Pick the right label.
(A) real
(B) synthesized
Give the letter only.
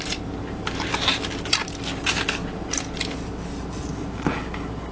A